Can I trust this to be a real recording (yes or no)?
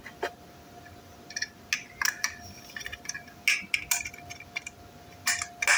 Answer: yes